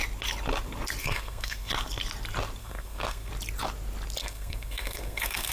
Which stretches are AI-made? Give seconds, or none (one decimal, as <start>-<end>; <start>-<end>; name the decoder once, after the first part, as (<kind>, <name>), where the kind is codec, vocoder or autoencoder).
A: 1.0-1.7 (codec, SNAC); 2.6-3.3; 4.2-5.5